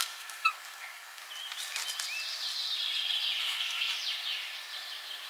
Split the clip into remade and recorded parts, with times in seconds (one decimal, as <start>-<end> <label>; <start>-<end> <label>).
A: 0.0-1.2 remade; 1.2-3.4 recorded; 3.4-3.9 remade; 3.9-5.3 recorded